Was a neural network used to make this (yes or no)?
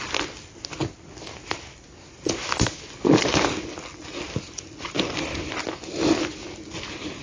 no